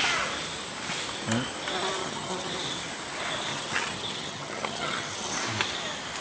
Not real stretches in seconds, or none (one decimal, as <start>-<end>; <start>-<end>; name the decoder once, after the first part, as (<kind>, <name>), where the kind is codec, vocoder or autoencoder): 2.0-2.5 (vocoder, HiFi-GAN); 3.5-5.4